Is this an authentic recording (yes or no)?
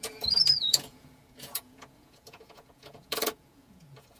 no